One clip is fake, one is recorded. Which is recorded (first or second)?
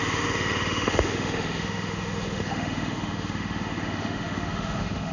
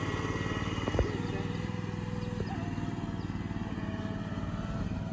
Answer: second